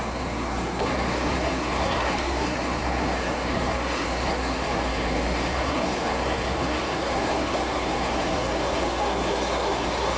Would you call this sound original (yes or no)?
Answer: no